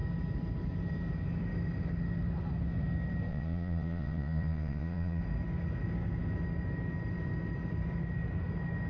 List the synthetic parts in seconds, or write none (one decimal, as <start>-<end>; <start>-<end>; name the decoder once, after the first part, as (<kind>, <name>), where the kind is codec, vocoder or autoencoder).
3.3-5.2 (vocoder, Vocos)